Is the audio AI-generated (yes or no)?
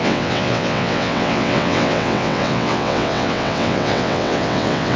yes